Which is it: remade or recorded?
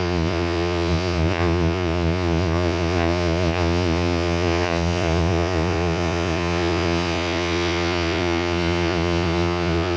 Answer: remade